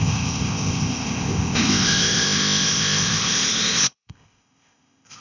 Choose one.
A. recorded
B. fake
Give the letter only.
B